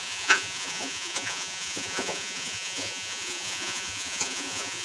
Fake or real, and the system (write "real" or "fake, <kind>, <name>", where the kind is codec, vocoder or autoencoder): fake, vocoder, Vocos